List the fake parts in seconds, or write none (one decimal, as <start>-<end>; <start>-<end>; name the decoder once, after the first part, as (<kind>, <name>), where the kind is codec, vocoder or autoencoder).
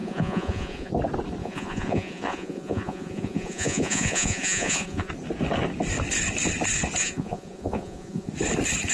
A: 0.0-0.9 (vocoder, Vocos); 1.4-5.1; 7.0-8.3